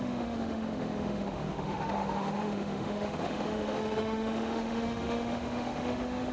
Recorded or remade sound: remade